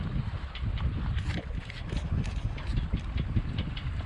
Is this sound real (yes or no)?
yes